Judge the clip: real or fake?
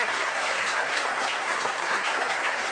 fake